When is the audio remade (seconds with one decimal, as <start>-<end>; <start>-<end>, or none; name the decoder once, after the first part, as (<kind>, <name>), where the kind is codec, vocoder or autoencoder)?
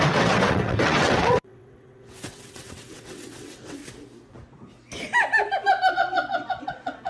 0.0-3.8 (vocoder, WaveNeXt); 5.9-7.1